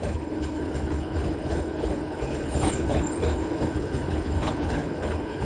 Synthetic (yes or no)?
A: yes